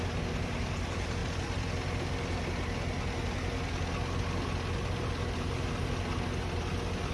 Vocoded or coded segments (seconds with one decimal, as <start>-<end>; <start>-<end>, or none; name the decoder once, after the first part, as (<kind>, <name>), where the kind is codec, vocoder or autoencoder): none